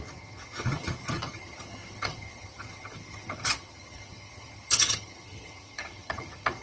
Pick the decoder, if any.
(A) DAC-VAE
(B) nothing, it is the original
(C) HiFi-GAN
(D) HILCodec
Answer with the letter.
C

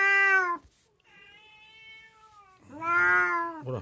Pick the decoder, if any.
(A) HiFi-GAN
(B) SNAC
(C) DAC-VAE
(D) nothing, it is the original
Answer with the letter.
D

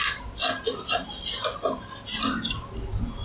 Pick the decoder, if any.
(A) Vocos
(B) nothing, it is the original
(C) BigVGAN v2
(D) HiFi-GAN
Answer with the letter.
B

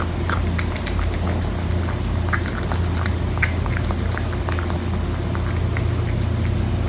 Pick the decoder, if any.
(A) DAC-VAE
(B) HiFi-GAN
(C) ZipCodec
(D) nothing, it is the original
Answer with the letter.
D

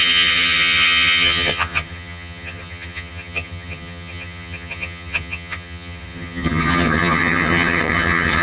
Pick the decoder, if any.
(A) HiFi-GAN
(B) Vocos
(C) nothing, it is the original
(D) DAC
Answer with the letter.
A